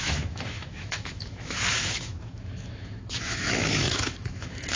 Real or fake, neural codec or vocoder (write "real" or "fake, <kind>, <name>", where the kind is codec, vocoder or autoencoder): fake, autoencoder, DAC-VAE